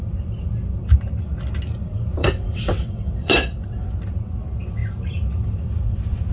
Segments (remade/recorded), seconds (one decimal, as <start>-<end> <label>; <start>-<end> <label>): 0.0-2.2 recorded; 2.2-3.9 remade; 3.9-6.3 recorded